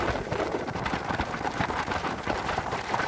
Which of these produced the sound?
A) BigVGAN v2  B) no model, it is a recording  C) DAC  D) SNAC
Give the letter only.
A